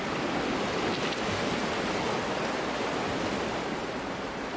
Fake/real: real